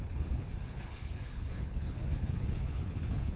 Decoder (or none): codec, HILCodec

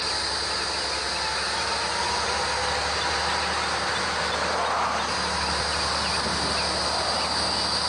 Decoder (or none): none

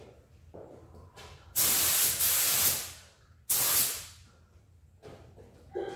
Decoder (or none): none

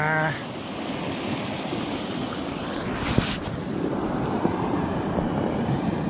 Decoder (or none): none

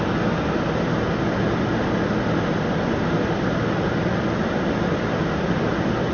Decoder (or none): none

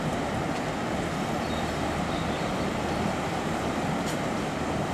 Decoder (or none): none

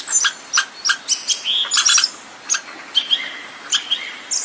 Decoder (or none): none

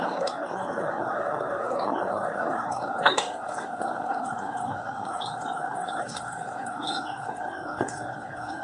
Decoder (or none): codec, SNAC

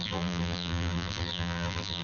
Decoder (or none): vocoder, BigVGAN v2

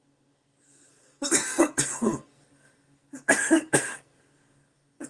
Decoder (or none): codec, SNAC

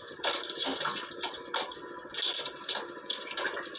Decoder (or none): none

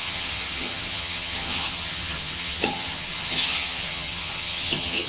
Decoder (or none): vocoder, HiFi-GAN